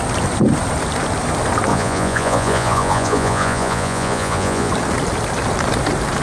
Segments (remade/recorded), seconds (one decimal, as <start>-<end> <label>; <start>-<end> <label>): 0.0-1.7 recorded; 1.7-4.7 remade; 4.7-6.2 recorded